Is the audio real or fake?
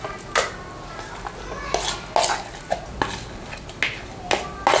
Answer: real